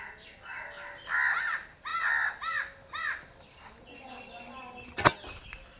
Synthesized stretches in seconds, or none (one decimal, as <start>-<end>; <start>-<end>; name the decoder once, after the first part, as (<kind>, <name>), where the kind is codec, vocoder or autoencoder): none